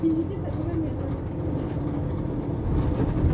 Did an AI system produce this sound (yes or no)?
no